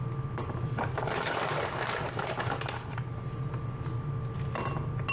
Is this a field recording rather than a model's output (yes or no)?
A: yes